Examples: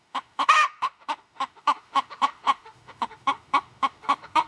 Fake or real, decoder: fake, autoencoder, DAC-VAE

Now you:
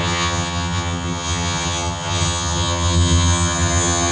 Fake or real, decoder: fake, vocoder, HiFi-GAN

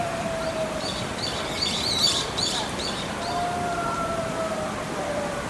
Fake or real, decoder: fake, vocoder, BigVGAN v2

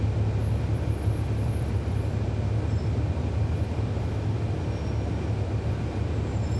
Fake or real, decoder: real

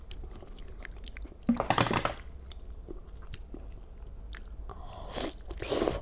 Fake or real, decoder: real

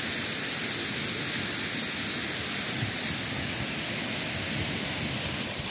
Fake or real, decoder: real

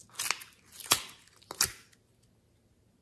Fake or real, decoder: real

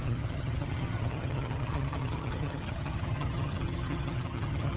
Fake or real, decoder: fake, vocoder, HiFi-GAN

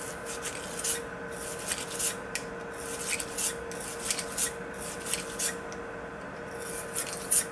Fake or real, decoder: real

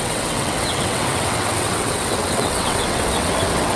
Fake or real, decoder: fake, vocoder, WaveNeXt